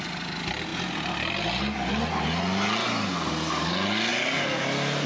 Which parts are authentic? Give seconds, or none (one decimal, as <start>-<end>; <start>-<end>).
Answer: 0.0-5.1